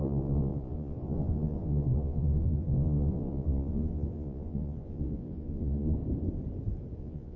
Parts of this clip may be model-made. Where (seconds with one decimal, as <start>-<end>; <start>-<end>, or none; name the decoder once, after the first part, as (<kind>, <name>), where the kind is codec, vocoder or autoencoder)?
0.0-6.0 (vocoder, Vocos); 7.0-7.4